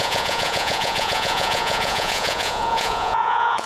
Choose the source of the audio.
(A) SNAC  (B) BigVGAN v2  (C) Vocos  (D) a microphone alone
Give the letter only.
C